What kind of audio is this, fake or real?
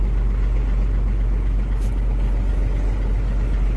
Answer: real